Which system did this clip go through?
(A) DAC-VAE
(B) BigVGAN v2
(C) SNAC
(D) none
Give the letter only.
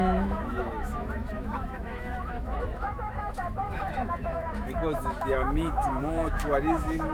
A